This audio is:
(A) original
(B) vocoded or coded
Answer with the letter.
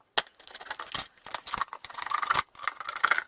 A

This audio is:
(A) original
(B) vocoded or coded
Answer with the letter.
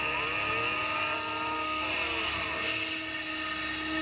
A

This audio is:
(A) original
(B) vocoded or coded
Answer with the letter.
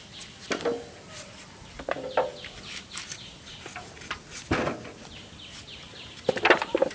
A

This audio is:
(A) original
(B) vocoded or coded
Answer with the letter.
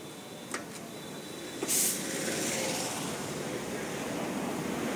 A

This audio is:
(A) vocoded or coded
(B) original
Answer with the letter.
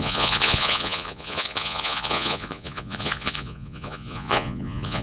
A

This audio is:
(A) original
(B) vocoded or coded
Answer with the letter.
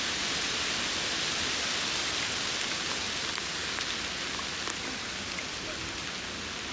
A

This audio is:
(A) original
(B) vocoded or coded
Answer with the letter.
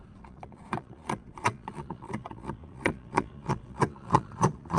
B